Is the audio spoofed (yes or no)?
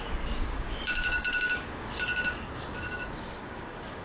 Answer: yes